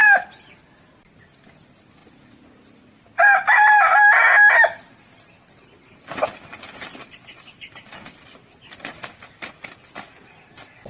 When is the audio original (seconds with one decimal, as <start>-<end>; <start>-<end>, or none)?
0.0-10.9

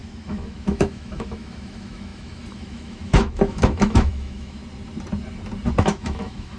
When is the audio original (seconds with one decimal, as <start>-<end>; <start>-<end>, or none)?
4.6-5.8

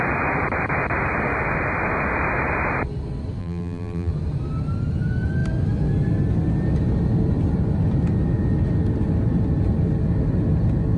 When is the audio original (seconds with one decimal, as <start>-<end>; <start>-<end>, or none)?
0.0-3.4; 4.1-11.0